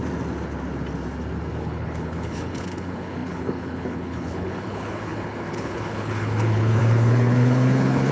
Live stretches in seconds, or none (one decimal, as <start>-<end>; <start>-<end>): 0.0-1.5